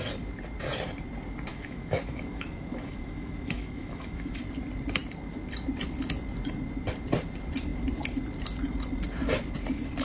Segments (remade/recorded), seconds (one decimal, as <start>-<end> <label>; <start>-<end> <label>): 0.0-1.5 recorded; 1.5-4.4 remade; 4.4-10.0 recorded